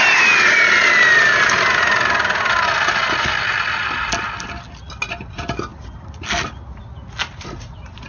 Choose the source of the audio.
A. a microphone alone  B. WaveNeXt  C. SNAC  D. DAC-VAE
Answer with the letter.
A